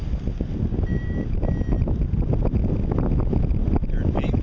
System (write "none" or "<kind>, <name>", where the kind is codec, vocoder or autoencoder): none